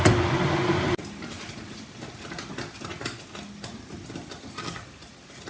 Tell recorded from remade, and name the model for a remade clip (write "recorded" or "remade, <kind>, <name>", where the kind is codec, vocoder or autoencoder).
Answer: recorded